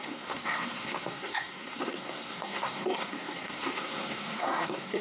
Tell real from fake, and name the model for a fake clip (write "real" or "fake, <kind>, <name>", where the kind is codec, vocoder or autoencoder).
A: fake, codec, SNAC